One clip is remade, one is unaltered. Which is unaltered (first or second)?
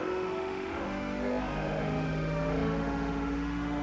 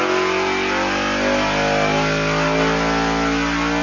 second